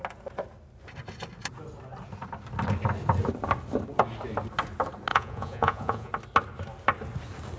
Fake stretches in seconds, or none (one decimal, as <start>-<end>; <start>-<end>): 5.1-6.1